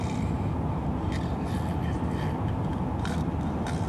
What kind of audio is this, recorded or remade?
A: recorded